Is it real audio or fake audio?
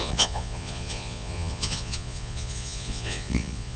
fake